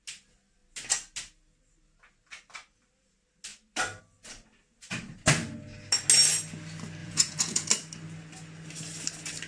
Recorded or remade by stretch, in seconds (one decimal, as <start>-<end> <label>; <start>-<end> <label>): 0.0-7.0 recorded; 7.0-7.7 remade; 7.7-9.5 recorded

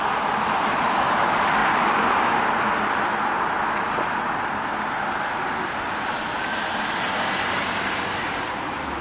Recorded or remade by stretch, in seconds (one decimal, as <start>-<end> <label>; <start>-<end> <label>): 0.0-9.0 recorded

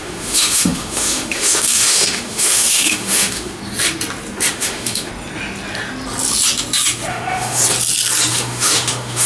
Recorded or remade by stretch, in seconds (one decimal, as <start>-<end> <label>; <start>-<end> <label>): 0.0-3.6 remade; 3.6-4.5 recorded; 4.5-5.1 remade; 5.1-7.1 recorded; 7.1-7.6 remade; 7.6-8.3 recorded; 8.3-9.3 remade

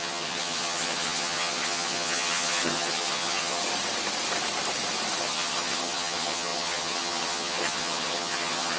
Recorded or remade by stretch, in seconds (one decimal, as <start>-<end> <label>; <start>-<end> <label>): 0.0-3.6 remade; 3.6-5.2 recorded; 5.2-8.8 remade